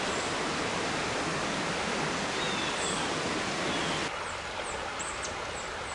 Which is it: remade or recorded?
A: recorded